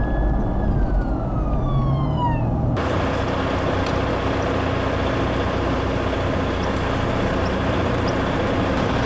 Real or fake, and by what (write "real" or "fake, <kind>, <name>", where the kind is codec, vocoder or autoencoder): real